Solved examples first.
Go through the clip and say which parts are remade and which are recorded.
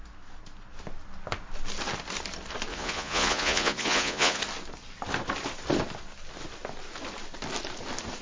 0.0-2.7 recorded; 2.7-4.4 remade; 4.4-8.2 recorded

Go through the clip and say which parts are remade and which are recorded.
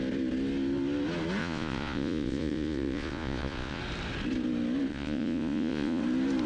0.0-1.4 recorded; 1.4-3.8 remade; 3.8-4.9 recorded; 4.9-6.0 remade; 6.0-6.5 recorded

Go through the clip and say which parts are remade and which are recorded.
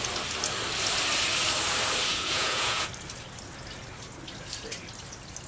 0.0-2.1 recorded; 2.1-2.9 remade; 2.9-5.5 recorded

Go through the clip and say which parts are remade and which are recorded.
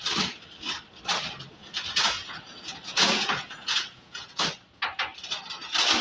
0.0-1.6 recorded; 1.6-4.4 remade; 4.4-6.0 recorded